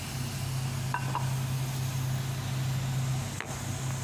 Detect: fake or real real